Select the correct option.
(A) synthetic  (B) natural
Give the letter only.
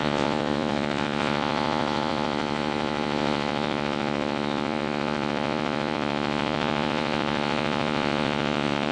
A